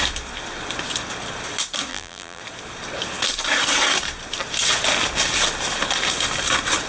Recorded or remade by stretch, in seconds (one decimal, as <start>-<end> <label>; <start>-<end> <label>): 0.0-1.9 recorded; 1.9-2.4 remade; 2.4-6.9 recorded